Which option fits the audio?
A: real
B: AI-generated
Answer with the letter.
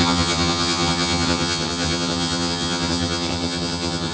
B